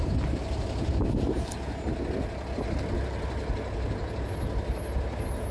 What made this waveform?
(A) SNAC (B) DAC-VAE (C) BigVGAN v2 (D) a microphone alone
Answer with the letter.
D